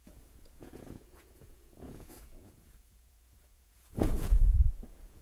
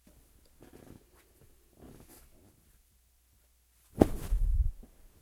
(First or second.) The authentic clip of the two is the second